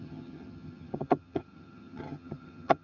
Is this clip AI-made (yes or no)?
yes